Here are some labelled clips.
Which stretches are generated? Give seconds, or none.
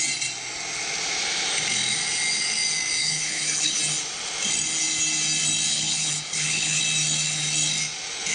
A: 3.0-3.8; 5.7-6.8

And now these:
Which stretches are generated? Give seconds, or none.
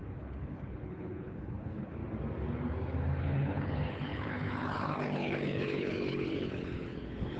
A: 0.0-2.0; 3.2-7.4